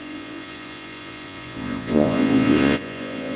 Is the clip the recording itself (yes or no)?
no